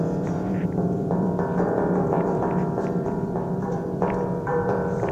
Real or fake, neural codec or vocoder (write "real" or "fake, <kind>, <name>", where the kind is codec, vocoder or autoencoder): fake, vocoder, BigVGAN v2